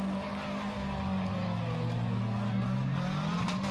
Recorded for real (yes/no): yes